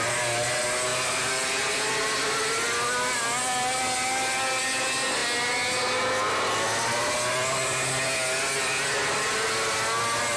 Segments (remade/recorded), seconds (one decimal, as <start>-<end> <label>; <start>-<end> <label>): 0.0-0.9 recorded; 0.9-1.8 remade; 1.8-10.4 recorded